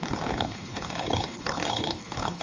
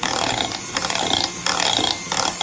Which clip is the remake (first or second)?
first